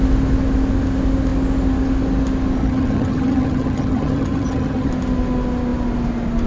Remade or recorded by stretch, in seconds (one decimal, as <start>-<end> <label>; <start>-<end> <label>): 0.0-2.6 recorded; 2.6-4.9 remade; 4.9-6.5 recorded